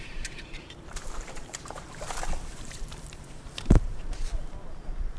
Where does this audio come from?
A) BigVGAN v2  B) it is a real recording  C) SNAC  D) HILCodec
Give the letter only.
A